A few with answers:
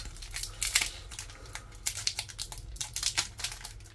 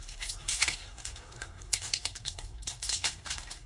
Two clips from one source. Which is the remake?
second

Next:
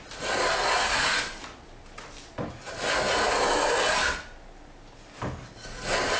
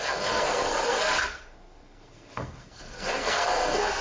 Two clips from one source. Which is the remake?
second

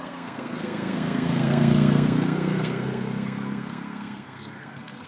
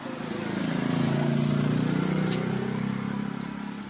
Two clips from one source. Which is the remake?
first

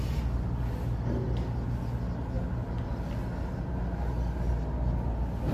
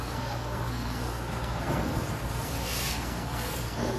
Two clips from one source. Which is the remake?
second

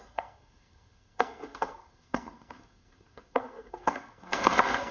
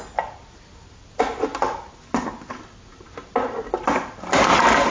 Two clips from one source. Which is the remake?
first